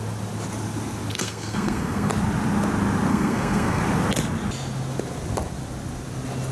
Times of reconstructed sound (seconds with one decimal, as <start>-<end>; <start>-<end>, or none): 1.1-2.1; 3.1-3.8